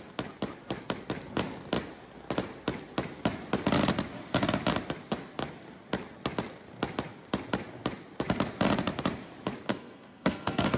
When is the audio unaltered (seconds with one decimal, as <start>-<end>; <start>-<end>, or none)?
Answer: 0.0-9.7